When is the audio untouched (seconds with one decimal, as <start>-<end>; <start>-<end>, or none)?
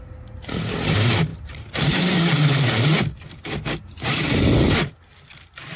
0.0-5.8